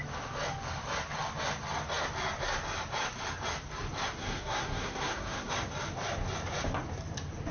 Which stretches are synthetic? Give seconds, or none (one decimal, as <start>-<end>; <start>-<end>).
4.2-5.5